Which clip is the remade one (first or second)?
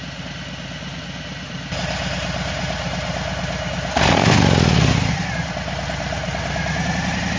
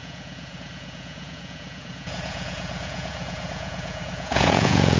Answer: second